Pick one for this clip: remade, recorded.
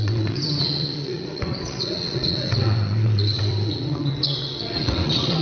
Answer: remade